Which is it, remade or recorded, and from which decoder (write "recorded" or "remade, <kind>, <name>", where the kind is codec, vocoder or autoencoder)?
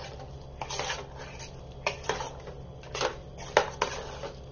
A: recorded